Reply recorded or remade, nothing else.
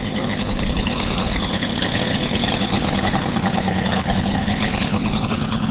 remade